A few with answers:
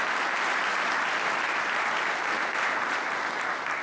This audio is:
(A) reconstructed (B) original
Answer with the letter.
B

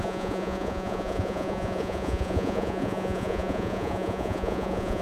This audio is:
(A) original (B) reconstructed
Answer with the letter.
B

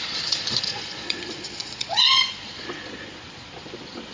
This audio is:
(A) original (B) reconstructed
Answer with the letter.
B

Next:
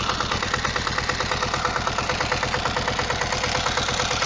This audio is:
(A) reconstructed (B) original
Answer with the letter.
B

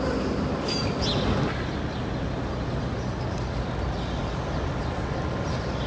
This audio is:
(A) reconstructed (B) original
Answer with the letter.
B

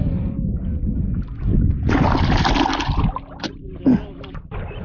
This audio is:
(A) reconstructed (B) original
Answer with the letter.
B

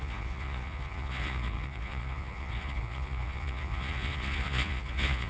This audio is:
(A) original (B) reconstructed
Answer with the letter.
B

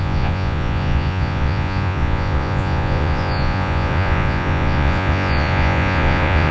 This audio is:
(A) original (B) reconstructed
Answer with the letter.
B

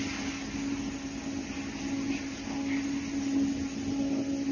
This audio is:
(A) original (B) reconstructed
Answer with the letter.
A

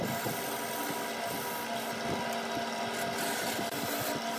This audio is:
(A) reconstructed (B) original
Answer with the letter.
B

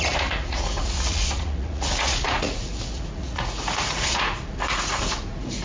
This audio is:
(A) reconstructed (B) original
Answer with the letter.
A